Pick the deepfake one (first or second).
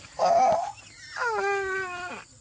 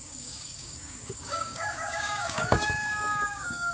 second